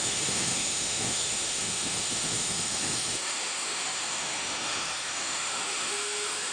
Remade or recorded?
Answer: remade